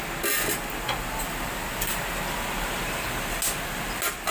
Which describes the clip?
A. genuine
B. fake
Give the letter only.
A